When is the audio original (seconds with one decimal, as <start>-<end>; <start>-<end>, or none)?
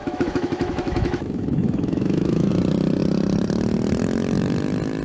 2.5-5.0